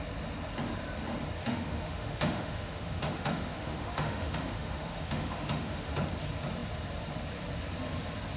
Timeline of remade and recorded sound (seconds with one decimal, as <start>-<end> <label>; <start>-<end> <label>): 0.0-1.4 recorded; 1.4-5.9 remade; 5.9-8.4 recorded

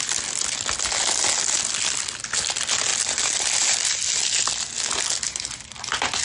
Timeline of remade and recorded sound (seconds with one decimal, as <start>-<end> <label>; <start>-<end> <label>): 0.0-6.2 recorded

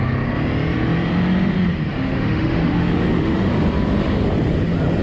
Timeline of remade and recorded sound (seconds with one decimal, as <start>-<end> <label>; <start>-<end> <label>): 0.0-1.9 recorded; 1.9-3.5 remade; 3.5-5.0 recorded

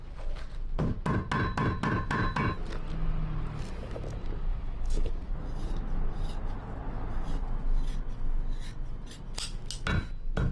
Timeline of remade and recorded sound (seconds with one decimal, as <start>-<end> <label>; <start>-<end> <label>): 0.0-4.5 recorded; 4.5-5.1 remade; 5.1-10.5 recorded

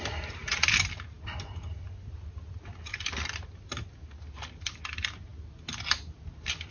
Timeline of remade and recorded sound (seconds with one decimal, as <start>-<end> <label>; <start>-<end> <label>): 0.0-6.7 recorded

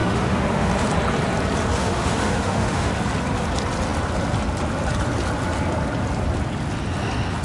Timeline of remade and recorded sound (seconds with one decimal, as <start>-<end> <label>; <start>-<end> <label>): 0.0-0.7 remade; 0.7-1.8 recorded; 1.8-2.9 remade; 2.9-7.4 recorded

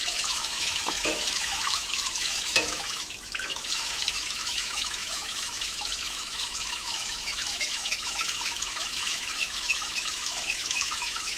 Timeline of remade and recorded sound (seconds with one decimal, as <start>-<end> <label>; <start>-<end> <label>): 0.0-11.4 remade

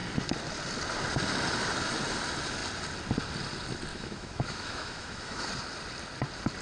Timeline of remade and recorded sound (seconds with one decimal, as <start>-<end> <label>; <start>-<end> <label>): 0.0-3.9 recorded; 3.9-5.5 remade; 5.5-6.6 recorded